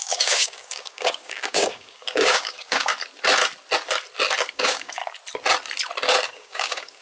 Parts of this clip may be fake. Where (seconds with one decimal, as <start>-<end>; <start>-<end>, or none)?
0.0-2.9; 4.5-5.0; 6.3-7.0

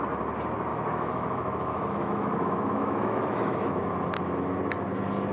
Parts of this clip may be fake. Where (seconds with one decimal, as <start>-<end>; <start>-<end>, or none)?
0.7-3.9

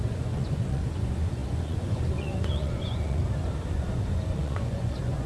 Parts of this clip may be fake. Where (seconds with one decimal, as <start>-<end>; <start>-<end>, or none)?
0.0-3.2; 3.7-5.3

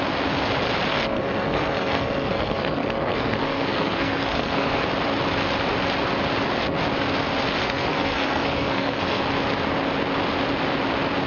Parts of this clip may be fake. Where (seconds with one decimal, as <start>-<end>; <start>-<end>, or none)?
0.9-4.8; 7.6-9.2

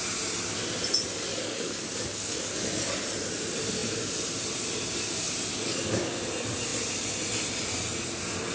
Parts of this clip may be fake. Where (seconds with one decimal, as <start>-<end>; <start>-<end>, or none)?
1.3-2.9; 5.5-6.2

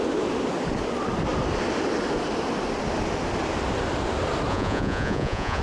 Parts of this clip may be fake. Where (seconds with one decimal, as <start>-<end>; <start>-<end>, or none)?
4.5-5.6

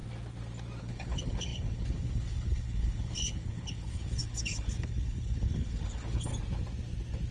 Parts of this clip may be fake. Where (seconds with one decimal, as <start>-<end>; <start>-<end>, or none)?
0.8-6.3

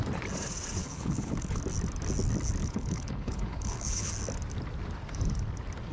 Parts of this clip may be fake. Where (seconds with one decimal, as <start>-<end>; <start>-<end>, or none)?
0.8-1.6; 2.6-4.1